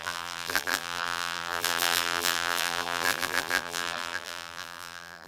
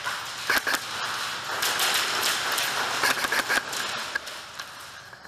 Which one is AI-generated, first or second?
first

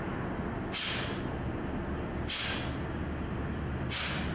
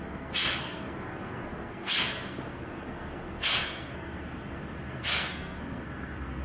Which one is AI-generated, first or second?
second